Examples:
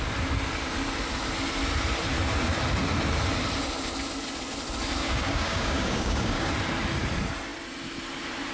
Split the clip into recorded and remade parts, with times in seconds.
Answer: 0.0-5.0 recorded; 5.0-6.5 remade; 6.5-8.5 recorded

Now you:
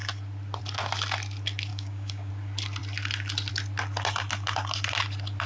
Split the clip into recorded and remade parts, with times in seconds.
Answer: 0.0-1.7 recorded; 1.7-2.3 remade; 2.3-5.5 recorded

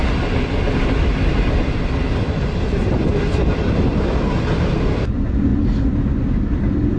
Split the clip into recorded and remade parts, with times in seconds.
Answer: 0.0-7.0 recorded

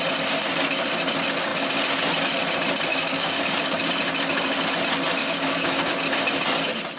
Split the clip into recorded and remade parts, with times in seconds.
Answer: 0.0-2.9 recorded; 2.9-3.4 remade; 3.4-5.2 recorded; 5.2-5.9 remade; 5.9-7.0 recorded

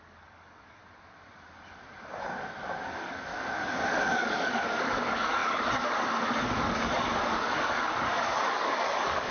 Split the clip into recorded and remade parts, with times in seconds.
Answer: 0.0-0.8 remade; 0.8-2.8 recorded; 2.8-9.3 remade

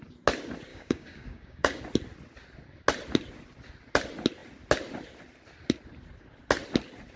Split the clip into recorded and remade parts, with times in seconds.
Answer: 0.0-0.7 recorded; 0.7-1.8 remade; 1.8-7.2 recorded

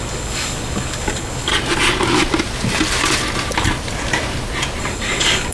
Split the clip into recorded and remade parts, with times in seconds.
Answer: 0.0-1.5 remade; 1.5-4.8 recorded; 4.8-5.5 remade

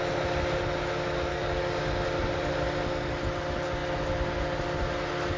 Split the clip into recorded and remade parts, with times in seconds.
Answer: 0.0-1.3 recorded; 1.3-1.8 remade; 1.8-5.4 recorded